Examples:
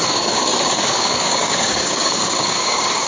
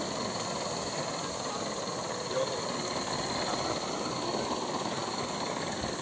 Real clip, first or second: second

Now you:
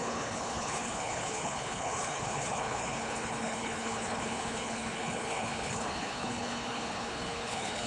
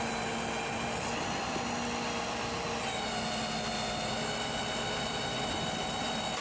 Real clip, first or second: second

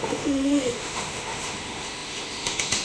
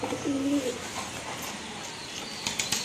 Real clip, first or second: second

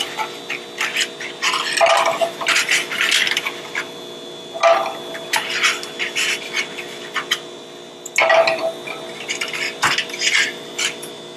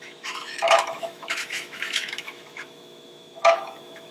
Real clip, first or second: first